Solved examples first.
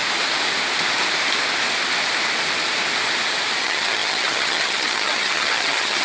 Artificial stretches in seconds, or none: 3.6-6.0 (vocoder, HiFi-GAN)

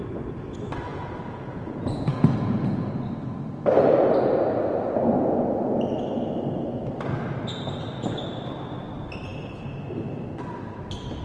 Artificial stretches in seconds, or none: 0.9-2.9 (vocoder, Vocos)

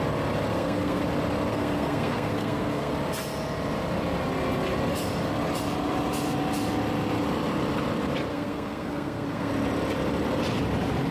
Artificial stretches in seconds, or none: 0.5-1.0 (codec, SNAC); 1.5-2.9; 8.3-9.5

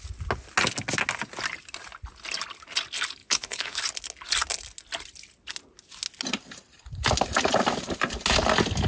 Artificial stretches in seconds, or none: 3.2-3.8 (vocoder, Vocos)

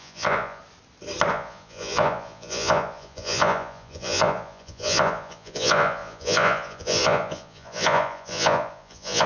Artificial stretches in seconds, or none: 0.0-0.6 (vocoder, Vocos); 1.3-9.3

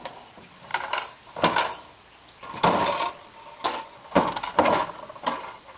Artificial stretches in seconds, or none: 3.6-4.3 (vocoder, Vocos)

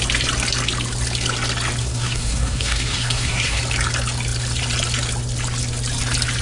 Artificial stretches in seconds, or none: 1.8-3.6 (codec, SNAC)